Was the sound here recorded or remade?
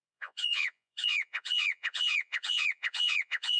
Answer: remade